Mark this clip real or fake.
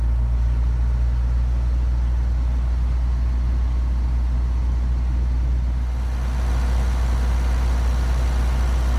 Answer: real